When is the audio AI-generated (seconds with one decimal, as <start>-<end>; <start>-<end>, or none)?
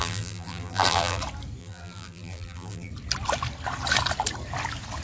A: 0.0-1.2; 1.6-2.9